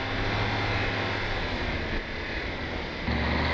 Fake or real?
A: real